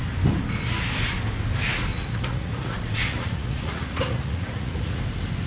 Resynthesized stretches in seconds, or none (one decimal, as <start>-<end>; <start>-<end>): 1.9-5.0